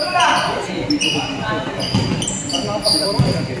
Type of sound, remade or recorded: recorded